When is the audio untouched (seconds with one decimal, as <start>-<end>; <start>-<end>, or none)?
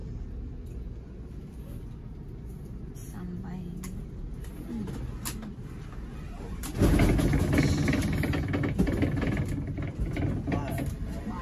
0.0-11.4